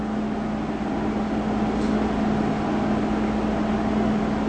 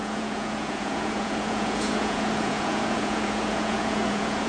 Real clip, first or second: first